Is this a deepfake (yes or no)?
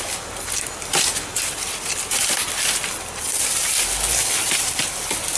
no